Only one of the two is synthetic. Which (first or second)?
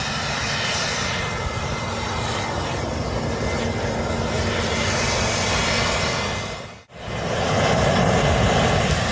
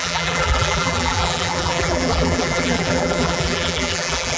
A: second